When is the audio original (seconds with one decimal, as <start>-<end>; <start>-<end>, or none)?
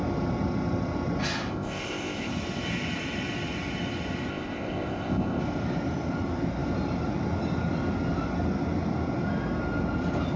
0.0-1.5; 2.3-4.3; 5.4-10.4